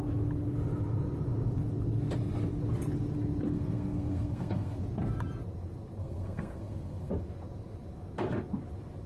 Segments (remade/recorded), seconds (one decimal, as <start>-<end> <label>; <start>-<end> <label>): 0.0-3.5 recorded; 3.5-4.8 remade; 4.8-6.0 recorded; 6.0-7.1 remade; 7.1-9.1 recorded